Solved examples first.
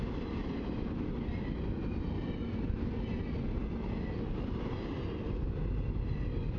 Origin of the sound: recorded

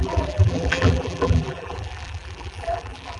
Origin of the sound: remade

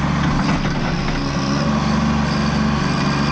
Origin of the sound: recorded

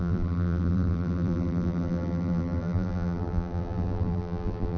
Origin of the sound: remade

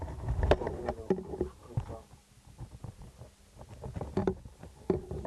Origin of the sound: recorded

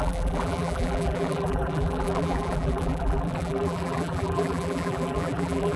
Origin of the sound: remade